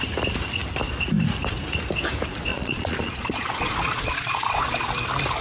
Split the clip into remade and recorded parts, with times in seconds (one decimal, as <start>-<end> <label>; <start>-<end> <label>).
0.0-2.5 recorded; 2.5-4.9 remade; 4.9-5.4 recorded